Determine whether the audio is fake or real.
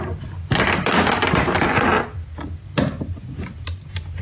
real